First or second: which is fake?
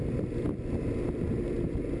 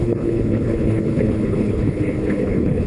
second